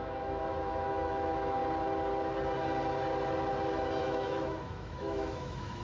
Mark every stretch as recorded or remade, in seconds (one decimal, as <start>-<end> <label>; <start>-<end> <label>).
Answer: 0.0-1.6 remade; 1.6-4.0 recorded; 4.0-5.8 remade